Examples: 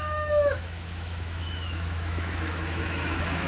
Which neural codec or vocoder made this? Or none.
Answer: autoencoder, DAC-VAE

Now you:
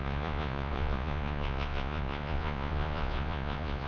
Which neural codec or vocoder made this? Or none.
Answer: vocoder, Vocos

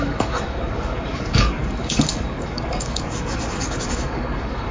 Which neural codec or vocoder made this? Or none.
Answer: codec, DAC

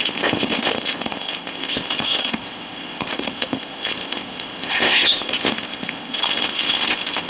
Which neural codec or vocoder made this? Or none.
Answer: codec, ZipCodec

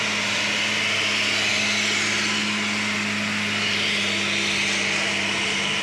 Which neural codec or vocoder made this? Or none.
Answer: none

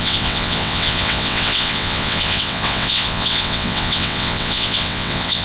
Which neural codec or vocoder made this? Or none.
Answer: vocoder, WaveNeXt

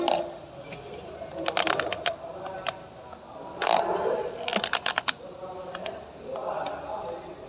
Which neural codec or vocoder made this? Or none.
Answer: none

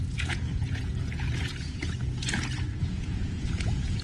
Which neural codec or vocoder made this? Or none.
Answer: vocoder, Vocos